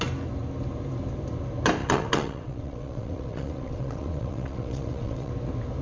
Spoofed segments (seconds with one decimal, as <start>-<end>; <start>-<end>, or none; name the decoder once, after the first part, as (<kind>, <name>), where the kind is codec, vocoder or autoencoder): 1.8-5.3 (vocoder, WaveNeXt)